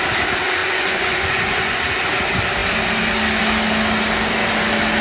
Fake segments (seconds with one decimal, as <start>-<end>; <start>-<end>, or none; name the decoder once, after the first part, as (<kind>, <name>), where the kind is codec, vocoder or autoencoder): 0.6-1.8 (vocoder, Vocos)